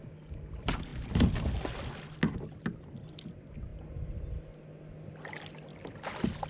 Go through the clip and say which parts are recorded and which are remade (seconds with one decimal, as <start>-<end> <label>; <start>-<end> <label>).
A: 0.0-6.5 recorded